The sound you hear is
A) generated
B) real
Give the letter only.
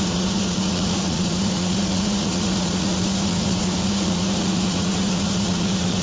A